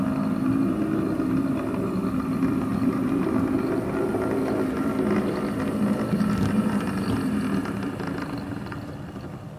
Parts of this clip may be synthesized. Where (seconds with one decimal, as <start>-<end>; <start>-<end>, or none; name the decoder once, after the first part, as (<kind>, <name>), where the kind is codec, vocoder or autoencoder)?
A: none